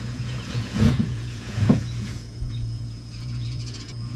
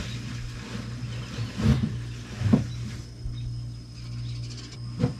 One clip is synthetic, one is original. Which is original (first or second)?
second